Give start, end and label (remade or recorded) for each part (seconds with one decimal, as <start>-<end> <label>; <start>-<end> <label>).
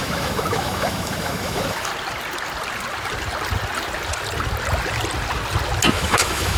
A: 0.0-1.9 remade; 1.9-5.9 recorded; 5.9-6.6 remade